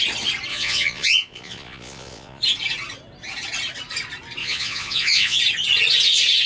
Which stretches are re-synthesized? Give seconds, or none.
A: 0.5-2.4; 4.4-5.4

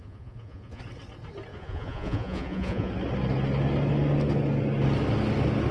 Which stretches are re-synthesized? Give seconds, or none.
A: 0.0-0.8; 1.5-2.9

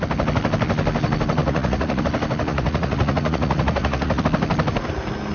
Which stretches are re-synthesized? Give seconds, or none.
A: 1.4-2.0; 2.5-4.2

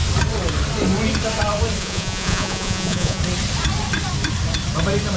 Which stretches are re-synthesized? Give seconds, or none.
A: 1.8-3.2

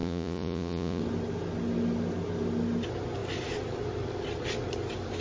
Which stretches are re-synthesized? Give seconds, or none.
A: 0.0-1.0

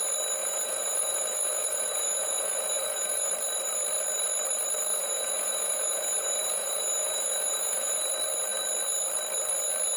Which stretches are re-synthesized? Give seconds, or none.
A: 0.4-3.3; 4.9-8.1

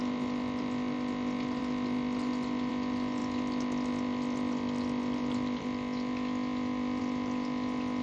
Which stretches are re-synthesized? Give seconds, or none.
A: none